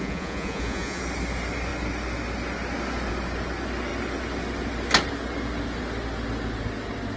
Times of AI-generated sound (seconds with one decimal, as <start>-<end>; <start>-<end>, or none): 0.0-1.0